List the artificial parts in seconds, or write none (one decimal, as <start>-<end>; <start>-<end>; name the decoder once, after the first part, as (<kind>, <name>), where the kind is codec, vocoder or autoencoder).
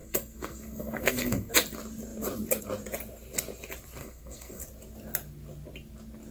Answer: 0.0-1.5 (codec, SNAC); 4.0-4.6